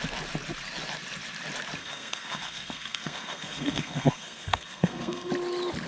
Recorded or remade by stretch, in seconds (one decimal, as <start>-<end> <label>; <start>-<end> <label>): 0.0-1.8 recorded; 1.8-5.3 remade; 5.3-5.9 recorded